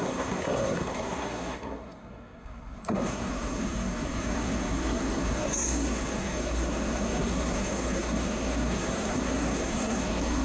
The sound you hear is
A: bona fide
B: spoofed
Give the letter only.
B